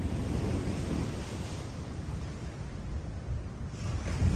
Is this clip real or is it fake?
real